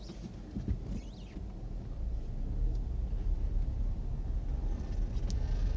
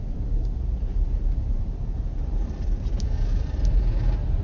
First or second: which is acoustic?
first